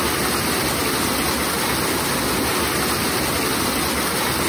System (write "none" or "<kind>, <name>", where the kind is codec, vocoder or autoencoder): none